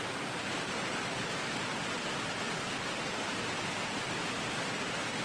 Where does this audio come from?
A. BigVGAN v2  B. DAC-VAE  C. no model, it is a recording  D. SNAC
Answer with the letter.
C